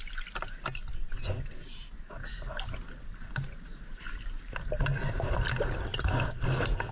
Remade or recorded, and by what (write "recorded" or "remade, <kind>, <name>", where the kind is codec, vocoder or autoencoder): recorded